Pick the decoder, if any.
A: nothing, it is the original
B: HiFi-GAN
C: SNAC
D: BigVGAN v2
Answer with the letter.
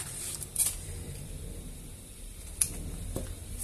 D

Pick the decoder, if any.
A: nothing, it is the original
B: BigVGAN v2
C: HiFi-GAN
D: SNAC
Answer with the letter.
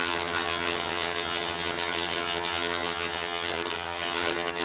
C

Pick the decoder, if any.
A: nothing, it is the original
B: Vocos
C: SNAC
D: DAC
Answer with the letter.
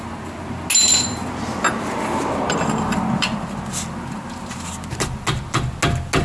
A